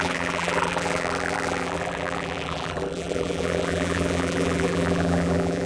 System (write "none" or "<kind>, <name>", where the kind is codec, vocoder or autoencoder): vocoder, BigVGAN v2